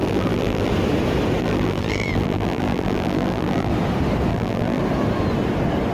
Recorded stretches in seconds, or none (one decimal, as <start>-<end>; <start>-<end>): 0.7-1.4; 3.7-4.3; 4.8-5.9